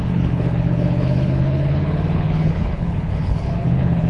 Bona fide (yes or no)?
no